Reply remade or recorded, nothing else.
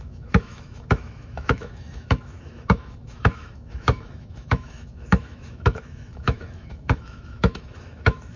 remade